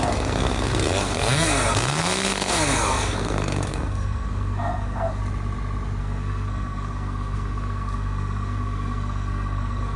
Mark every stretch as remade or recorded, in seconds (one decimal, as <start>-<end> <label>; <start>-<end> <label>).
0.0-5.2 remade; 5.2-6.0 recorded; 6.0-10.0 remade